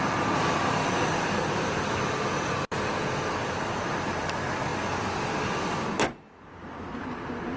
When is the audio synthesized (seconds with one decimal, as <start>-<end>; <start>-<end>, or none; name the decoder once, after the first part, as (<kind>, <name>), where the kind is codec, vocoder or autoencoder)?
none

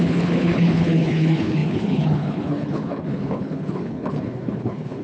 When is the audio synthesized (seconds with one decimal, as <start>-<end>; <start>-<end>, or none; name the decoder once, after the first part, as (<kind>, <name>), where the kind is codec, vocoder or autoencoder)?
0.0-5.0 (codec, HILCodec)

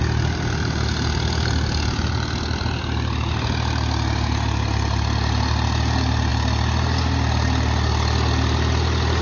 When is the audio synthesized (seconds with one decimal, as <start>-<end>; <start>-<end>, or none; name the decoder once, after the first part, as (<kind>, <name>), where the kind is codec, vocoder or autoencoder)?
none

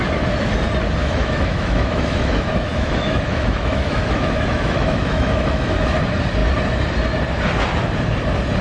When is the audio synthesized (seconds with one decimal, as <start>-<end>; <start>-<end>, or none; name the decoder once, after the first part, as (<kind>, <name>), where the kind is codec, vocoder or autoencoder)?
1.0-5.7 (autoencoder, DAC-VAE)

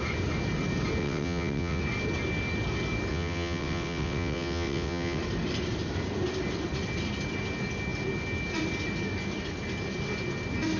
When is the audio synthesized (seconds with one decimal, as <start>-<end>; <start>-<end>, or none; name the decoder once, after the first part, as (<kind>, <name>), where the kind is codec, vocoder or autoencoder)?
1.0-1.8 (vocoder, WaveNeXt); 3.1-5.2

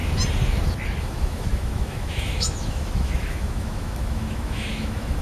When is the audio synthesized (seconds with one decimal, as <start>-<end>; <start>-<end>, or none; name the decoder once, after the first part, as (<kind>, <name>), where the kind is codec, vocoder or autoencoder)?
1.0-5.2 (autoencoder, DAC-VAE)

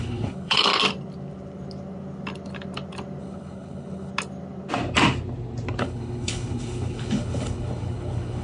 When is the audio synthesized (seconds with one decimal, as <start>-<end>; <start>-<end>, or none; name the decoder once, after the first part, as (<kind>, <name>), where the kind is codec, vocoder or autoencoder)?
0.0-0.7 (codec, HILCodec); 3.2-4.1; 5.8-8.4

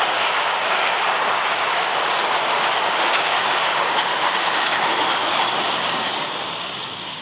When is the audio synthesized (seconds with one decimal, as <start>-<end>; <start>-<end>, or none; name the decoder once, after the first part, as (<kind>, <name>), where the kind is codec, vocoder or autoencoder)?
0.0-1.9 (codec, DAC); 2.7-7.2